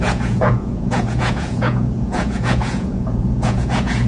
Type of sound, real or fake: fake